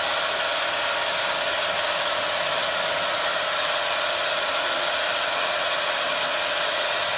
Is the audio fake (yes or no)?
yes